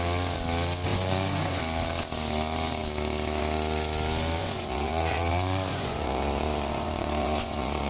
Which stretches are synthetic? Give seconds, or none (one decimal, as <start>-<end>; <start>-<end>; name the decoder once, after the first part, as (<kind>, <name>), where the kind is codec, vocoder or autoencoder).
0.9-1.6 (vocoder, Vocos); 4.4-7.9